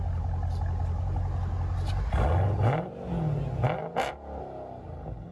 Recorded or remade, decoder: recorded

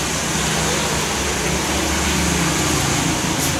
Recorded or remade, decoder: recorded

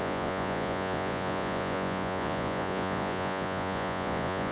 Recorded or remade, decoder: remade, vocoder, Vocos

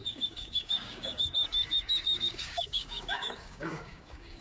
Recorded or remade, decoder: remade, codec, DAC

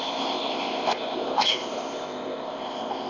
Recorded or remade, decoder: remade, codec, ZipCodec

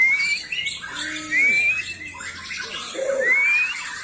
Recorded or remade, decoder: recorded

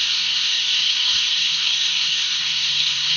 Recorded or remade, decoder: remade, codec, SNAC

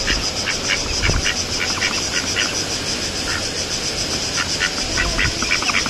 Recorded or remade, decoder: recorded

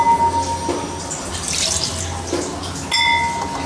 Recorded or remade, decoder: recorded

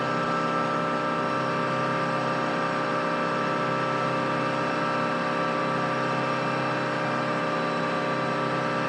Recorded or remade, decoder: recorded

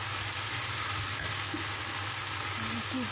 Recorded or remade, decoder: recorded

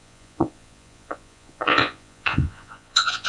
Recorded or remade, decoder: remade, vocoder, Vocos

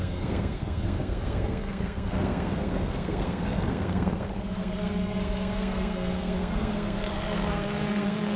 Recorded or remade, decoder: remade, codec, SNAC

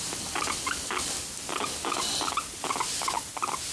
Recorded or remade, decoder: recorded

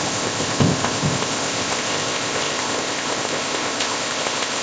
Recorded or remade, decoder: remade, codec, ZipCodec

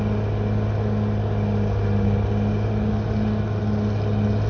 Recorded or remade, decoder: recorded